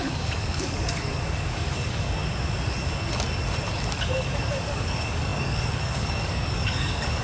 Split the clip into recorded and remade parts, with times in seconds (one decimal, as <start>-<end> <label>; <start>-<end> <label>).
0.0-2.2 remade; 2.2-3.9 recorded; 3.9-7.2 remade